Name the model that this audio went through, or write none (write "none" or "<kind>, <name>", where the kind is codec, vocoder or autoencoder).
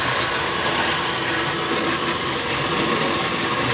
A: none